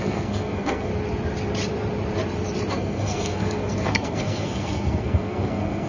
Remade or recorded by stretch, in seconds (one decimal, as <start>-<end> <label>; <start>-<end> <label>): 0.0-0.9 remade; 0.9-2.7 recorded; 2.7-5.9 remade